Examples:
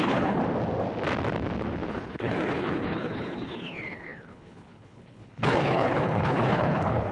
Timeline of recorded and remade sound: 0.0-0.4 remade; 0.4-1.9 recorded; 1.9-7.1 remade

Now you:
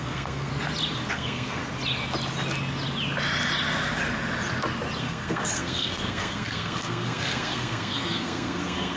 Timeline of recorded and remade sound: 0.0-0.5 remade; 0.5-1.1 recorded; 1.1-1.6 remade; 1.6-5.0 recorded; 5.0-9.0 remade